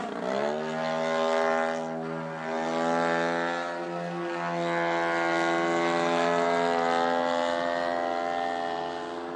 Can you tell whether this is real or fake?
real